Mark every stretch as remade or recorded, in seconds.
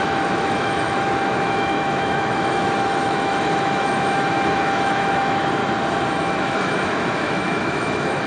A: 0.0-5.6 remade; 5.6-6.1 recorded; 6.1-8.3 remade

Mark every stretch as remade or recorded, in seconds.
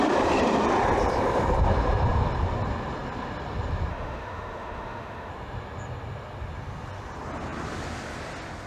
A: 0.0-3.9 recorded; 3.9-5.3 remade; 5.3-8.7 recorded